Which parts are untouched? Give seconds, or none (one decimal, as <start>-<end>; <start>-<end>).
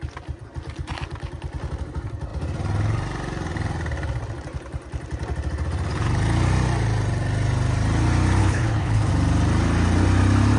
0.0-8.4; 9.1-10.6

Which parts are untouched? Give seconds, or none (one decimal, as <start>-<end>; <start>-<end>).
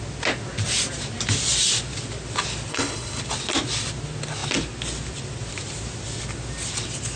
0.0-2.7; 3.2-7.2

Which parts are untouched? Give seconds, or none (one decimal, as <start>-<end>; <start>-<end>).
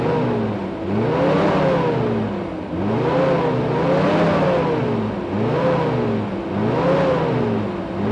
0.0-8.1